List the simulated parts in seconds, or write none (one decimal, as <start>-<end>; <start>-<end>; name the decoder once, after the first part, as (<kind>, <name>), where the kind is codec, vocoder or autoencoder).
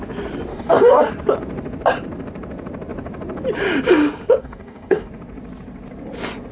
0.5-1.1 (codec, DAC); 4.4-5.1